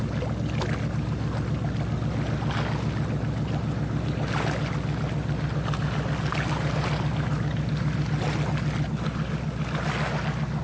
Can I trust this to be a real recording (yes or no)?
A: yes